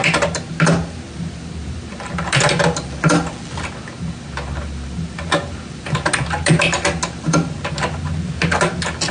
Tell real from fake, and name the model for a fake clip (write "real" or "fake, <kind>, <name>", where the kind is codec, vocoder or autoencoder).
real